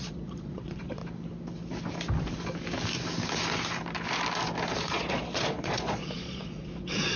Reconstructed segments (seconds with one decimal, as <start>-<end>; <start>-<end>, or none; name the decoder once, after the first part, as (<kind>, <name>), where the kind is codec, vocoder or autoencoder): 0.0-1.0 (vocoder, Vocos); 4.8-7.2